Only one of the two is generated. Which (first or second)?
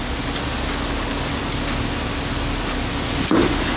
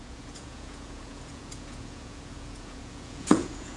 second